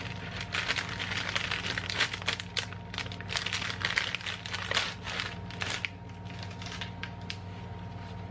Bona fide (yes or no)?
yes